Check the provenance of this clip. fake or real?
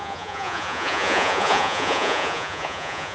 fake